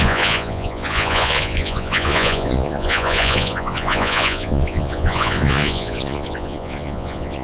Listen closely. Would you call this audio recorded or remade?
remade